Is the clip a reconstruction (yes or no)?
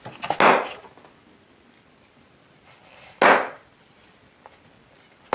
no